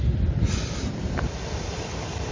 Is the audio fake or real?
real